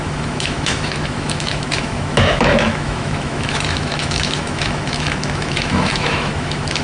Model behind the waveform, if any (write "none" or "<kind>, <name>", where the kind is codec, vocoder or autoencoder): autoencoder, DAC-VAE